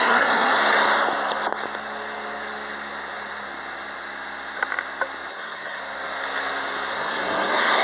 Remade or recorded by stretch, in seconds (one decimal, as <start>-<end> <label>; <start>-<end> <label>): 0.0-0.6 remade; 0.6-5.3 recorded; 5.3-5.8 remade; 5.8-6.9 recorded; 6.9-7.8 remade

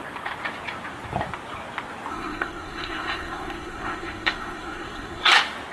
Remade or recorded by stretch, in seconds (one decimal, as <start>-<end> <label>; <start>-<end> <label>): 0.0-2.1 recorded; 2.1-5.3 remade; 5.3-5.7 recorded

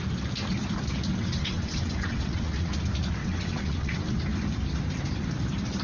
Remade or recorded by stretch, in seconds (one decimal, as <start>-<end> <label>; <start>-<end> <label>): 0.0-1.1 recorded; 1.1-2.7 remade; 2.7-3.2 recorded; 3.2-4.2 remade; 4.2-5.8 recorded

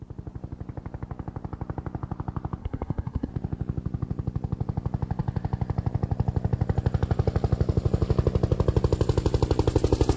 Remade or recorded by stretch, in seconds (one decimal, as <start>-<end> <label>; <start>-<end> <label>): 0.0-2.6 recorded; 2.6-3.3 remade; 3.3-10.2 recorded

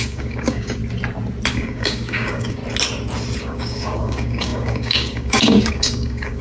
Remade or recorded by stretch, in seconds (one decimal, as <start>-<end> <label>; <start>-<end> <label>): 0.0-0.8 remade; 0.8-1.5 recorded; 1.5-2.6 remade; 2.6-3.4 recorded; 3.4-6.4 remade

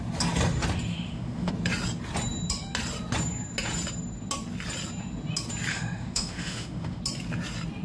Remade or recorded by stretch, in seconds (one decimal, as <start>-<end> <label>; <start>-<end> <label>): 0.0-0.9 recorded; 0.9-1.5 remade; 1.5-5.7 recorded; 5.7-7.0 remade; 7.0-7.8 recorded

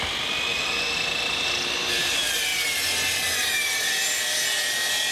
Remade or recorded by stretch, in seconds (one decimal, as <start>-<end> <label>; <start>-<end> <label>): 0.0-5.1 recorded